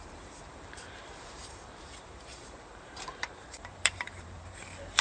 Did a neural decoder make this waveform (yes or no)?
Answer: yes